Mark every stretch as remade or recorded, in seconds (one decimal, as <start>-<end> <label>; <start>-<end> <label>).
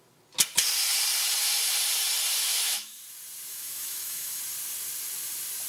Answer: 0.0-2.4 recorded; 2.4-3.0 remade; 3.0-3.5 recorded; 3.5-4.4 remade; 4.4-5.7 recorded